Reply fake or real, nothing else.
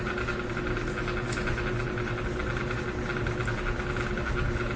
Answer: real